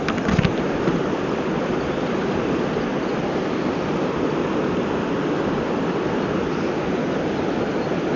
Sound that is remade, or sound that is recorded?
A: recorded